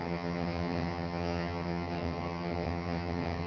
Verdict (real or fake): fake